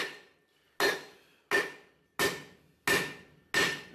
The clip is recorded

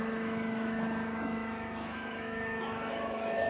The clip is remade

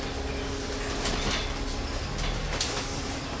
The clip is recorded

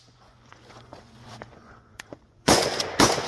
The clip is remade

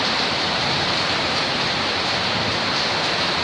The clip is remade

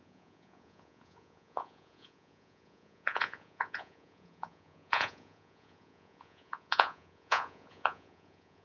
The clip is remade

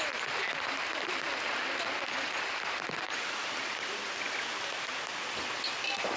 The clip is recorded